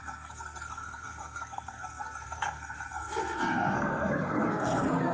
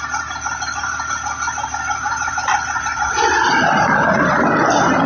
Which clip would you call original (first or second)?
second